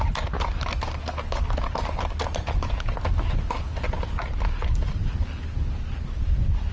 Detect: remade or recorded recorded